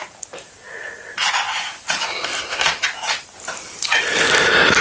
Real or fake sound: real